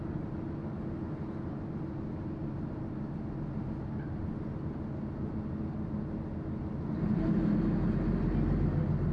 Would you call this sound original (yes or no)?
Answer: yes